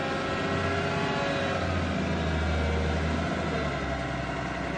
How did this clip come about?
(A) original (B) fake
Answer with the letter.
A